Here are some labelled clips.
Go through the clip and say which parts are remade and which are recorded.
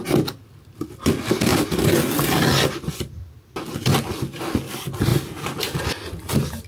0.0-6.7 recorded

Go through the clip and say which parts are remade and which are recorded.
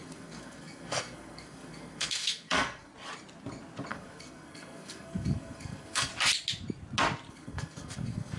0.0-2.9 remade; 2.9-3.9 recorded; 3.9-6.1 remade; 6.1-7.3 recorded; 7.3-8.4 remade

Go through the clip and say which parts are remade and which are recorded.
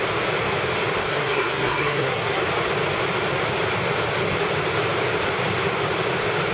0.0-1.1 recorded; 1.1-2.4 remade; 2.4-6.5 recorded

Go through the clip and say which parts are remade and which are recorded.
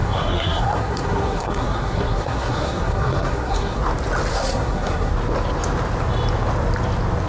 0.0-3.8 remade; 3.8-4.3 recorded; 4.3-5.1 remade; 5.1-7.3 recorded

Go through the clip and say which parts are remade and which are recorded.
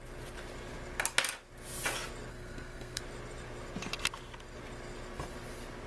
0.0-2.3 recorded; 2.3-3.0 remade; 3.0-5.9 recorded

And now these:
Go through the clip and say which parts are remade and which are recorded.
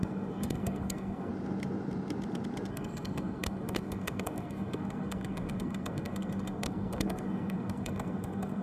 0.0-1.3 remade; 1.3-2.7 recorded; 2.7-8.6 remade